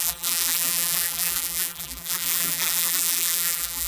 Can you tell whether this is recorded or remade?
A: remade